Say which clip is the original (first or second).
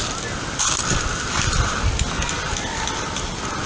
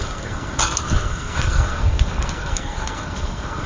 first